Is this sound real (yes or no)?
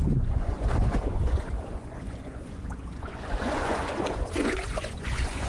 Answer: no